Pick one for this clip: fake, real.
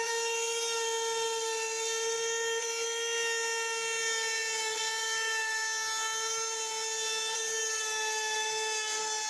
real